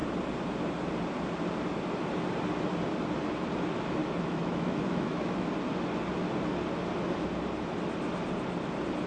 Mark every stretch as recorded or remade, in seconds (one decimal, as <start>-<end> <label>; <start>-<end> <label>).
0.0-4.0 recorded; 4.0-5.5 remade; 5.5-9.1 recorded